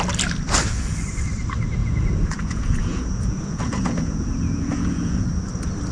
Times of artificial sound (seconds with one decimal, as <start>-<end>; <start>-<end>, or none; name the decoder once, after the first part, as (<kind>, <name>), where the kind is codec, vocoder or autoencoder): 1.8-5.3 (vocoder, Vocos)